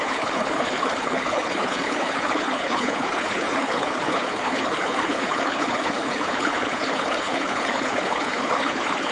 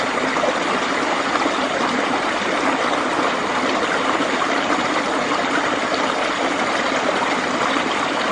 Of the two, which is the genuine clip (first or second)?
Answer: second